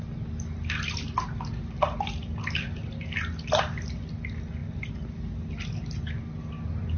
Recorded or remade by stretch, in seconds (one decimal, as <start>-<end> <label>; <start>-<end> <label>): 0.0-7.0 recorded

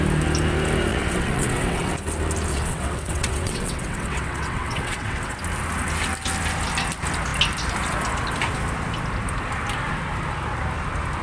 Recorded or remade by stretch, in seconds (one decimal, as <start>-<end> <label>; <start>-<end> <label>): 0.0-0.9 recorded; 0.9-1.9 remade; 1.9-2.5 recorded; 2.5-5.4 remade; 5.4-11.2 recorded

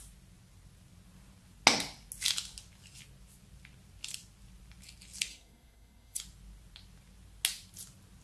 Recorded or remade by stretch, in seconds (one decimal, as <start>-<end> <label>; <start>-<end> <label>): 0.0-5.3 recorded; 5.3-6.2 remade; 6.2-8.2 recorded

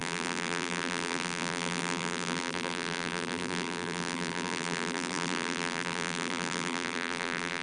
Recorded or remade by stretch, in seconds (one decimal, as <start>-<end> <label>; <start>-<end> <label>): 0.0-7.6 remade

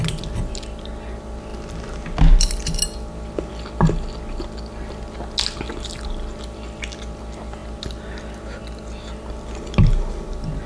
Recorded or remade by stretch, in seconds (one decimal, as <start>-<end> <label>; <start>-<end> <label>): 0.0-10.7 recorded

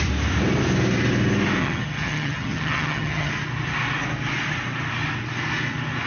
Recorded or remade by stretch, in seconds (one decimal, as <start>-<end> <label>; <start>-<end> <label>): 0.0-1.6 recorded; 1.6-3.3 remade; 3.3-6.1 recorded